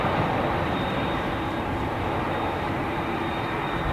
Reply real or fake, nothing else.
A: fake